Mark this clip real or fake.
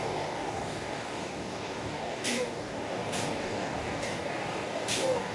fake